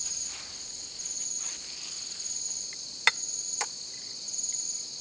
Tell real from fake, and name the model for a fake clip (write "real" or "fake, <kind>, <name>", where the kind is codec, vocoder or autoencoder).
real